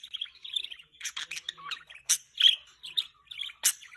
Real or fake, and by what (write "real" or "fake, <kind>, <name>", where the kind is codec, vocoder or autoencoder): real